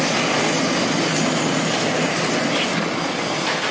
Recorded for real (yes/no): yes